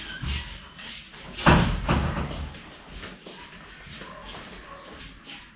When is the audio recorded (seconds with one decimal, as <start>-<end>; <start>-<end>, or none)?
0.0-5.6